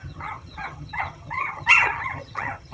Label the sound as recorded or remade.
remade